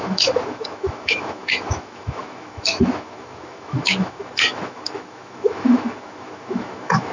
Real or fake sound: fake